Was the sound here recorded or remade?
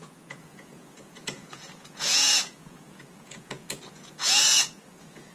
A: remade